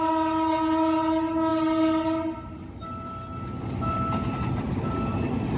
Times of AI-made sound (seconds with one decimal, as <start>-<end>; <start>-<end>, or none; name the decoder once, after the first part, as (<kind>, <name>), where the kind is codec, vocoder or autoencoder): none